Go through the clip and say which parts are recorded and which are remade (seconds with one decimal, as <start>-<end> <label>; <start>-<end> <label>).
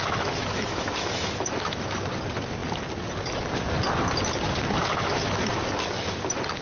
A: 0.0-2.1 remade; 2.1-4.9 recorded; 4.9-5.4 remade; 5.4-6.6 recorded